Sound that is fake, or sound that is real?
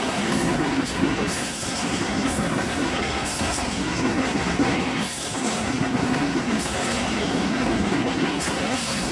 fake